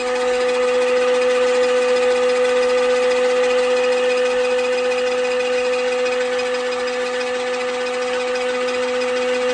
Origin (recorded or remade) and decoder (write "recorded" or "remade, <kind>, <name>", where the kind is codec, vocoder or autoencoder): recorded